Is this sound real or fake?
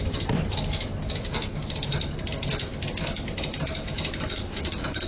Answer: real